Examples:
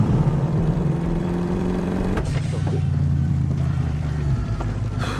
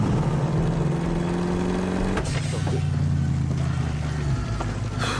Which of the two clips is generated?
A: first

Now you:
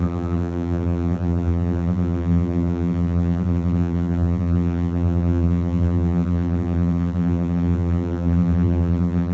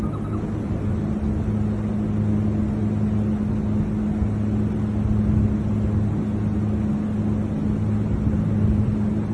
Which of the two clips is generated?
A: first